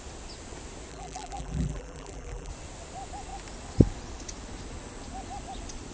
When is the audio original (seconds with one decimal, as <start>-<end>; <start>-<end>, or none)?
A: 0.0-0.9; 2.5-5.9